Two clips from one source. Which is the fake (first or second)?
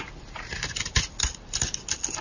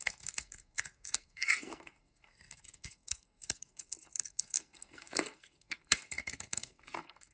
second